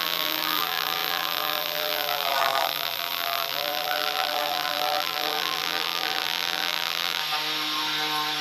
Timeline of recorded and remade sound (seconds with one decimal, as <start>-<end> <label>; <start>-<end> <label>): 0.0-7.2 remade; 7.2-8.4 recorded